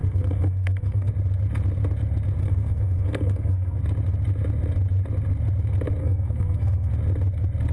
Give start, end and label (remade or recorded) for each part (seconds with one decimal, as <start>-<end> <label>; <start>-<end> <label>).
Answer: 0.0-1.1 remade; 1.1-2.4 recorded; 2.4-3.8 remade; 3.8-6.0 recorded; 6.0-6.9 remade; 6.9-7.7 recorded